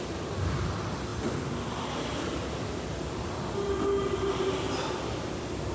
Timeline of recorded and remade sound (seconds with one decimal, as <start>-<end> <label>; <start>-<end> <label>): 0.0-5.7 recorded